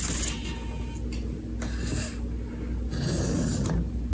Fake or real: real